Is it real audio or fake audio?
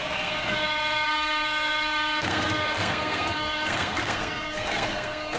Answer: fake